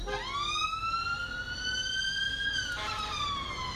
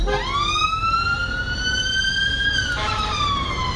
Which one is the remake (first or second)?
second